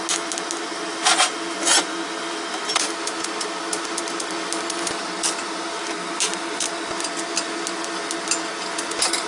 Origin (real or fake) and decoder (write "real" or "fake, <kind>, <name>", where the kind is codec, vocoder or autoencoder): real